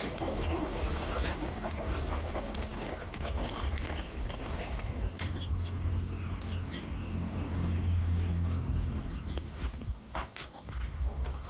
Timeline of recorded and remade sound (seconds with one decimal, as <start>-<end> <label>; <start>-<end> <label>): 0.0-11.5 remade